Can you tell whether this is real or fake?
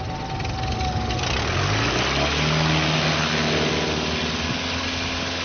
real